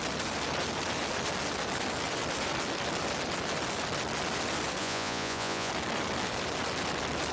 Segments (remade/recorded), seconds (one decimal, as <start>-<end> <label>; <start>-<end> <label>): 0.0-4.8 recorded; 4.8-5.7 remade; 5.7-7.3 recorded